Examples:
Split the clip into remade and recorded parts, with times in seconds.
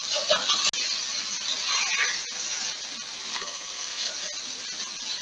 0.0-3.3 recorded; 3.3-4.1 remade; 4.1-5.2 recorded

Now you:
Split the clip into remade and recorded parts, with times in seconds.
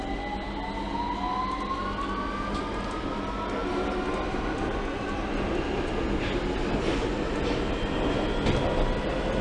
0.0-9.4 recorded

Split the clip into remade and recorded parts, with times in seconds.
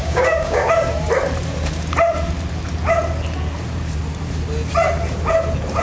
0.0-0.7 remade; 0.7-5.8 recorded